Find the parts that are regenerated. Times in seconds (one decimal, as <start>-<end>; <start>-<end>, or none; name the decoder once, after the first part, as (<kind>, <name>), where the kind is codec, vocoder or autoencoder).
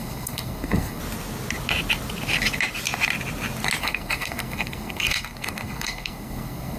0.0-1.0 (codec, SNAC); 3.8-6.8